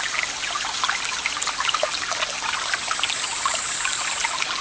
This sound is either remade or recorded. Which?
recorded